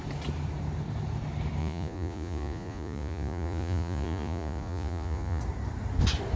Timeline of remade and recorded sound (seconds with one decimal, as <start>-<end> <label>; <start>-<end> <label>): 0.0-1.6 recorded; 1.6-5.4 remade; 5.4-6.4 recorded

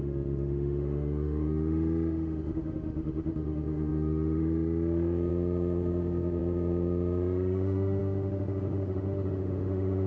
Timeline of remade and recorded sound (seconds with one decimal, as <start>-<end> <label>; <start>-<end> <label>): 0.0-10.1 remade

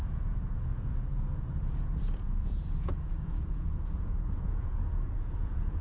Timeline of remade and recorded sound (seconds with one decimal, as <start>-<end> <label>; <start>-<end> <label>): 0.0-5.8 remade

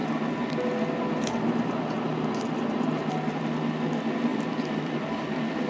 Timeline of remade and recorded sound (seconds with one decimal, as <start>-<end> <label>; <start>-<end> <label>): 0.0-4.3 recorded; 4.3-5.7 remade

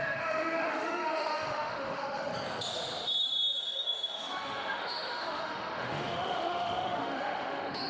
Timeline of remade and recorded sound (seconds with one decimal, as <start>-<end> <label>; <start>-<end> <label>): 0.0-2.3 remade; 2.3-3.6 recorded; 3.6-7.9 remade